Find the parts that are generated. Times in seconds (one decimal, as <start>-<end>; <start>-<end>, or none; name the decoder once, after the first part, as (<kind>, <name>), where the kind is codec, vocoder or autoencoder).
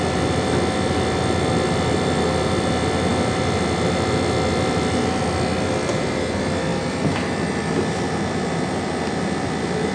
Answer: none